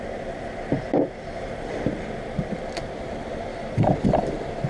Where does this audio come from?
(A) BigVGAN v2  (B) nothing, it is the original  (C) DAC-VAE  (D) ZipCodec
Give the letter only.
A